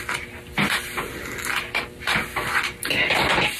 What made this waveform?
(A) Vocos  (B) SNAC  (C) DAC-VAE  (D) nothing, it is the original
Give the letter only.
D